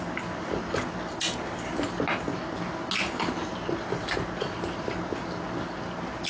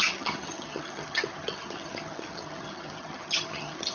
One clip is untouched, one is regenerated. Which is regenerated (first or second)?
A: second